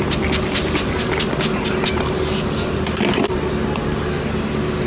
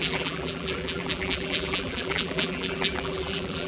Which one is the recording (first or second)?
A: first